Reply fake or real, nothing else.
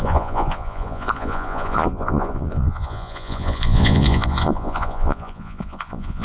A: fake